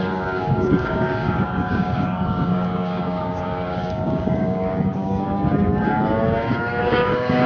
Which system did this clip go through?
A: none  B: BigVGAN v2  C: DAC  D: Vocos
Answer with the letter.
C